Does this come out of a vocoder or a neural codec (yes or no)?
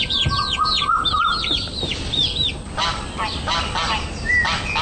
no